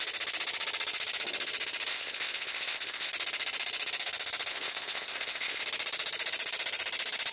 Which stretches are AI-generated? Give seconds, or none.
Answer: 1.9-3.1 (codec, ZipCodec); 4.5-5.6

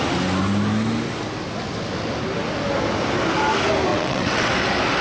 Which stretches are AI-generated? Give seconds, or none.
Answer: 3.9-4.5 (vocoder, WaveNeXt)

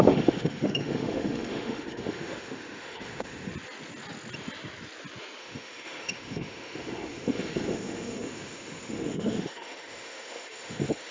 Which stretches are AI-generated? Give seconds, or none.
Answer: 0.0-3.5 (autoencoder, DAC-VAE); 5.4-11.1

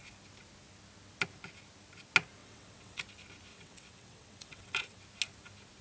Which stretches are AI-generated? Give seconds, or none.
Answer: 2.4-3.0 (vocoder, WaveNeXt); 3.5-5.0

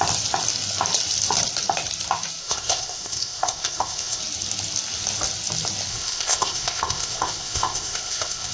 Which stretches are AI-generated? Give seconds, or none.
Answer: 2.4-4.2 (codec, ZipCodec); 5.9-8.5